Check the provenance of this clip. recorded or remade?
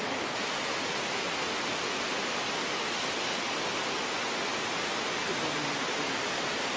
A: recorded